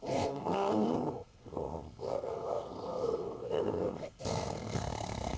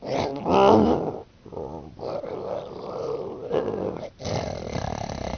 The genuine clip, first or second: second